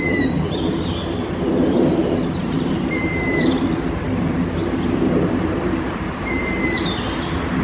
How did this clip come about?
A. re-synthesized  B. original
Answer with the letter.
A